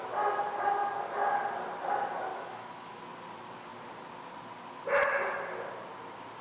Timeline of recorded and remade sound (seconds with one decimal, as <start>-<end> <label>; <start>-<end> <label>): 0.0-2.3 recorded; 2.3-3.0 remade; 3.0-6.4 recorded